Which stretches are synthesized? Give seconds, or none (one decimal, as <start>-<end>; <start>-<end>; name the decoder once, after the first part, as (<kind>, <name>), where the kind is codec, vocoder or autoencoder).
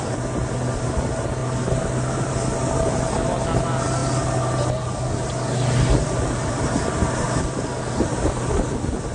none